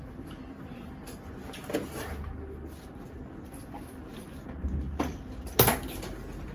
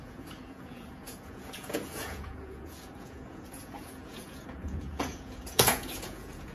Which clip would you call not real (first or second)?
second